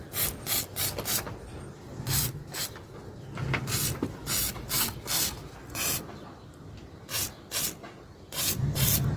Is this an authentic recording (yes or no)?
yes